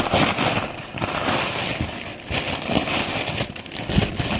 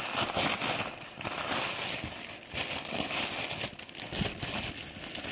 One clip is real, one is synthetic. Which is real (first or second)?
second